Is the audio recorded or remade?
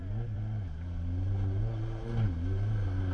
recorded